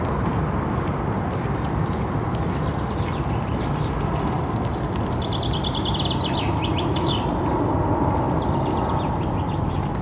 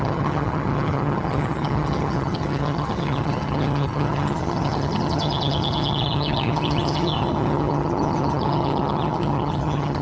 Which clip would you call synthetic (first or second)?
second